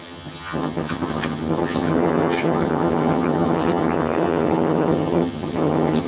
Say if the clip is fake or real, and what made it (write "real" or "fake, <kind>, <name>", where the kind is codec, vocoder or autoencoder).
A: fake, vocoder, HiFi-GAN